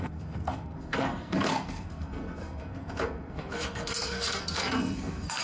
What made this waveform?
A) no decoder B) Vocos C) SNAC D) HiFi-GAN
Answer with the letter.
C